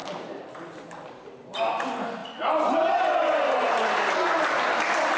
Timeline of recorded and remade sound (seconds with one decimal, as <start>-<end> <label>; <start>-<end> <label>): 0.0-5.2 recorded